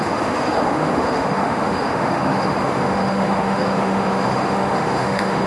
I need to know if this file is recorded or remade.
remade